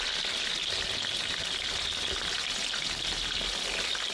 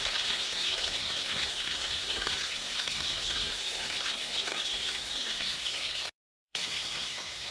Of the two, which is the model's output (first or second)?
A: second